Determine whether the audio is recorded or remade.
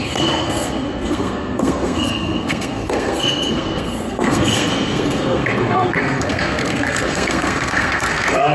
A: remade